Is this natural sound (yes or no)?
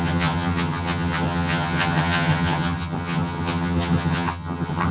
no